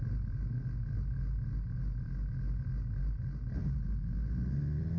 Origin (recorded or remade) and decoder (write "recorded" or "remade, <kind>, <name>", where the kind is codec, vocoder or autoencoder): recorded